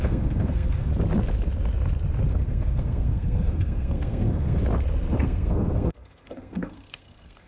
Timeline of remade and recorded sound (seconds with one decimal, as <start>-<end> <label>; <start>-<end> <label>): 0.0-0.9 remade; 0.9-2.3 recorded; 2.3-4.6 remade; 4.6-5.2 recorded; 5.2-7.5 remade